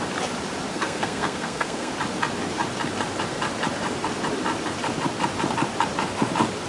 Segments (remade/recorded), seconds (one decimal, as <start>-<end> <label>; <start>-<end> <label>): 0.0-0.7 recorded; 0.7-1.9 remade; 1.9-6.7 recorded